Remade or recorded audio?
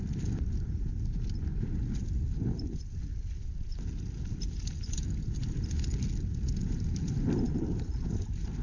recorded